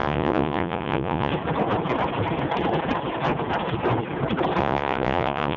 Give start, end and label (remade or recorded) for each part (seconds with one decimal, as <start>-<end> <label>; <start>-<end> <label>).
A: 0.0-1.3 remade; 1.3-4.6 recorded; 4.6-5.6 remade